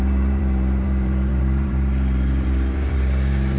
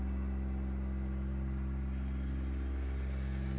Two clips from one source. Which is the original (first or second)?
second